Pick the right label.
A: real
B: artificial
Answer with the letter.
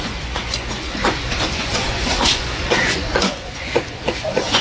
B